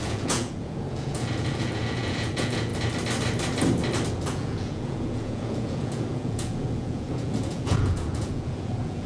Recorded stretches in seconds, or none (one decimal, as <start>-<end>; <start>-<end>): 2.7-4.1